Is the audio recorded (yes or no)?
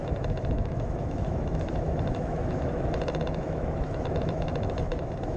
no